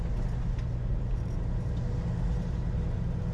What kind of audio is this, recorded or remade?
recorded